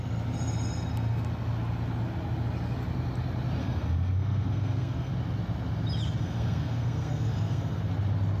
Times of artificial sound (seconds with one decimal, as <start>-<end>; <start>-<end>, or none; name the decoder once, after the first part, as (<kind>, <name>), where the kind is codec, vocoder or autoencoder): 3.6-5.1 (codec, SNAC); 6.2-7.8